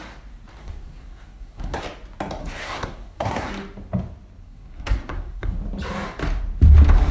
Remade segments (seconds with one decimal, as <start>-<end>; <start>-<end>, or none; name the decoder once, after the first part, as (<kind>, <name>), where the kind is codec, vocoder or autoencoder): 0.6-1.8 (codec, SNAC); 2.4-3.5; 4.4-5.6